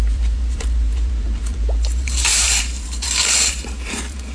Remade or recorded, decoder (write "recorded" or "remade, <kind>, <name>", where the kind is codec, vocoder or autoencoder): remade, vocoder, BigVGAN v2